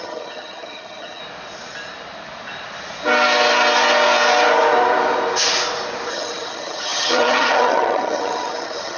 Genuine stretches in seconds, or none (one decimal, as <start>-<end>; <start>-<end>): 1.2-6.1